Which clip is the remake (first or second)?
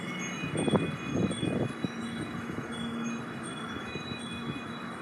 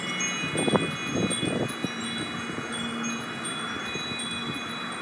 first